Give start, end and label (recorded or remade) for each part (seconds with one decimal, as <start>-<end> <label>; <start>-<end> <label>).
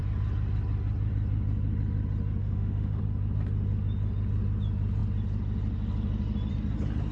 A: 0.0-2.4 recorded; 2.4-3.0 remade; 3.0-7.1 recorded